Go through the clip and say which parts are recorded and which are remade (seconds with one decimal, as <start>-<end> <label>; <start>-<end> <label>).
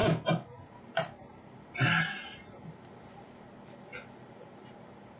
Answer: 0.0-2.9 remade; 2.9-5.2 recorded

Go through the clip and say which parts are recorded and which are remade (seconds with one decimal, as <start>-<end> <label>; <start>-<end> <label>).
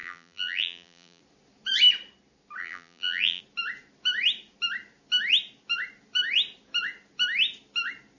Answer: 0.0-1.2 remade; 1.2-2.6 recorded; 2.6-3.4 remade; 3.4-8.2 recorded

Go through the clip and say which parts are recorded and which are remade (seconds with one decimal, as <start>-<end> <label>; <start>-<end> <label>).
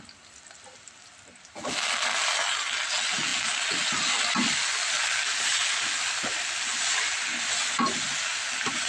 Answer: 0.0-8.9 recorded